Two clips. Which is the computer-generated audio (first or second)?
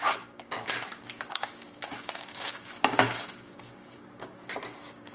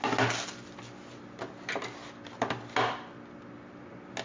first